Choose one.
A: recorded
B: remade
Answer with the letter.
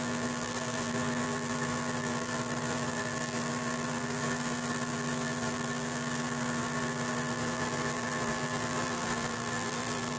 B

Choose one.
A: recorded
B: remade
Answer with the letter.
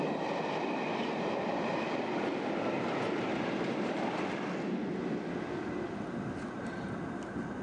A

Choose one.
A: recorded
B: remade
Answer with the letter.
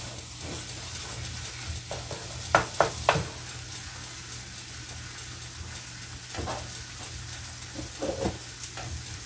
A